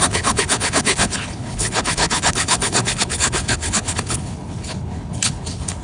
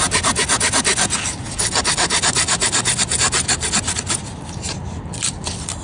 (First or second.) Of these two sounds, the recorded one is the second